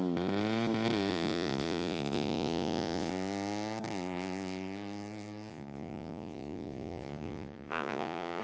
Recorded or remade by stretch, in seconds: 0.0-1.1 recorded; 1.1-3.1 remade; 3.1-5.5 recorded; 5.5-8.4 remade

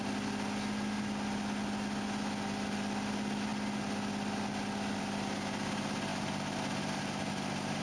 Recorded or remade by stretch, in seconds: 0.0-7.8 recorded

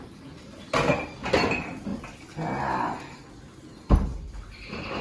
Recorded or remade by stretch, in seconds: 0.0-5.0 recorded

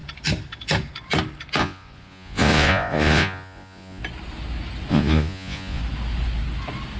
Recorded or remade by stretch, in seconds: 0.0-1.6 recorded; 1.6-4.0 remade; 4.0-4.9 recorded; 4.9-5.8 remade; 5.8-7.0 recorded

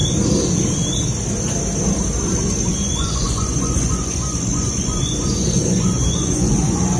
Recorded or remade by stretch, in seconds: 0.0-2.7 recorded; 2.7-7.0 remade